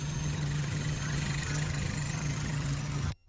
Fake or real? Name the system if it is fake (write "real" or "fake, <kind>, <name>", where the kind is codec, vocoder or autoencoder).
fake, vocoder, HiFi-GAN